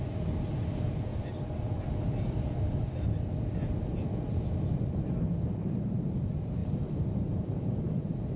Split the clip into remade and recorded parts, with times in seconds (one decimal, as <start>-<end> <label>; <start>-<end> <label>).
0.0-1.1 remade; 1.1-5.4 recorded; 5.4-6.6 remade; 6.6-7.1 recorded; 7.1-8.4 remade